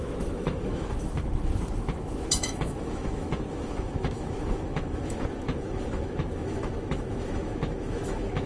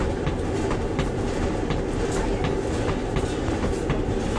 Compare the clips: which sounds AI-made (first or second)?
first